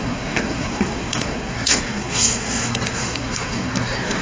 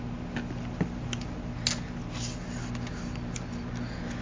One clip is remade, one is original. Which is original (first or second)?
second